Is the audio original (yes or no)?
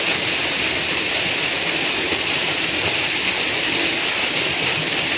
yes